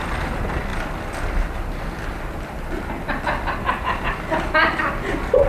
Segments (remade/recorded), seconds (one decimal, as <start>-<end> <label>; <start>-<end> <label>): 0.0-5.5 recorded